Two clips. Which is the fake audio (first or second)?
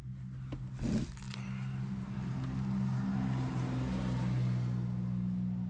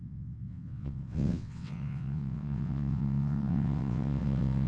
second